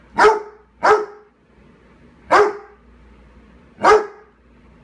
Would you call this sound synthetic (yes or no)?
no